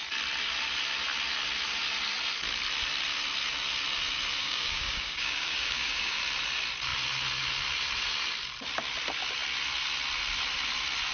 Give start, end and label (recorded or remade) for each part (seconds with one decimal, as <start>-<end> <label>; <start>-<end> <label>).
0.0-4.4 recorded; 4.4-6.2 remade; 6.2-11.1 recorded